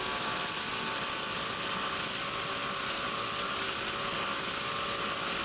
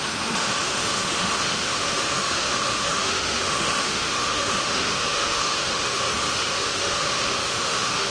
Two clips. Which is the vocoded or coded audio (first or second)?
second